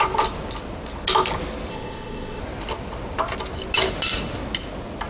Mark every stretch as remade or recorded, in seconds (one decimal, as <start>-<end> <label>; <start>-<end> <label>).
0.0-1.7 recorded; 1.7-2.4 remade; 2.4-5.1 recorded

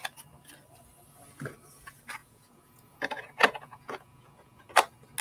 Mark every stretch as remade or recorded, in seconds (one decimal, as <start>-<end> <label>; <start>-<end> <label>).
0.0-2.2 recorded; 2.2-4.7 remade; 4.7-5.2 recorded

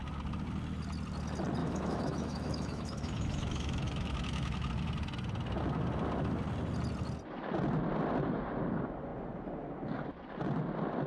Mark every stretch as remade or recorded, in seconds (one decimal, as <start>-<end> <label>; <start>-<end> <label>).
0.0-1.6 recorded; 1.6-4.7 remade; 4.7-11.1 recorded

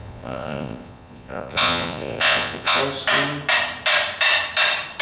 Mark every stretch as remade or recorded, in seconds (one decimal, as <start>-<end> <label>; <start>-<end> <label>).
0.0-2.8 remade; 2.8-5.0 recorded

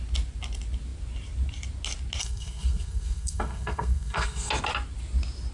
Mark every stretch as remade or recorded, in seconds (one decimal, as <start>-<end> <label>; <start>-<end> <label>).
0.0-2.2 recorded; 2.2-4.5 remade; 4.5-5.5 recorded